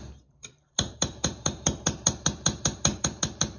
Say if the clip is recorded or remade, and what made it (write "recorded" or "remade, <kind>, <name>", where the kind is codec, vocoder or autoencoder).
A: remade, vocoder, BigVGAN v2